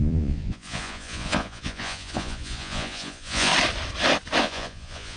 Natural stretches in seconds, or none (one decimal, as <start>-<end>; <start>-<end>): 3.5-4.4